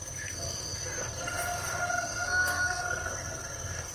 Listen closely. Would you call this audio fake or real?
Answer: fake